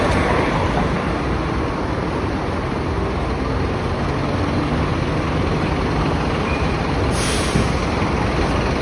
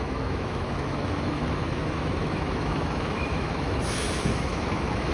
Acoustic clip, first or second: first